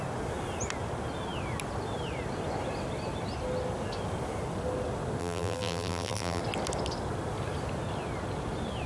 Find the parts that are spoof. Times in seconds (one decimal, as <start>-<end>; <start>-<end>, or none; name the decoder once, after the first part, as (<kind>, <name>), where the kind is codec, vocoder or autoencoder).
5.2-6.4 (vocoder, BigVGAN v2)